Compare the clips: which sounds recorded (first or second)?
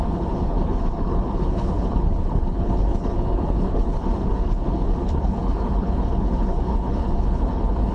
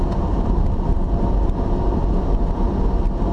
second